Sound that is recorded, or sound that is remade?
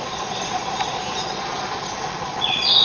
remade